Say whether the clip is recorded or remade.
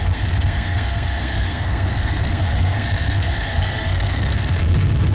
remade